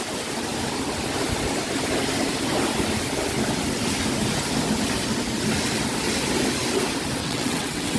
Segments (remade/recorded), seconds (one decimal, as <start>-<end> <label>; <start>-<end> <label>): 0.0-7.2 recorded; 7.2-8.0 remade

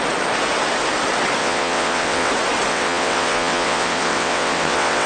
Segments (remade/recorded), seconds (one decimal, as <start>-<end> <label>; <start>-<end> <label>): 0.0-1.4 recorded; 1.4-2.3 remade; 2.3-2.7 recorded; 2.7-5.1 remade

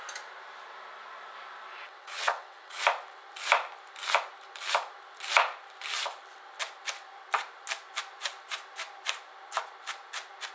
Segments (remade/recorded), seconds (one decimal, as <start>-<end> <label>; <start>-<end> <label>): 0.0-1.7 recorded; 1.7-2.8 remade; 2.8-10.5 recorded

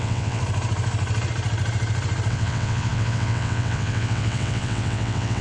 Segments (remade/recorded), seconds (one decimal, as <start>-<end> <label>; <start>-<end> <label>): 0.0-0.4 remade; 0.4-2.3 recorded; 2.3-5.4 remade

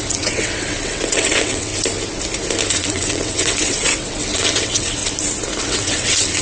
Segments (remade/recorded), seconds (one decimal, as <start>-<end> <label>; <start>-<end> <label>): 0.0-1.7 remade; 1.7-2.7 recorded; 2.7-5.0 remade; 5.0-5.6 recorded; 5.6-6.4 remade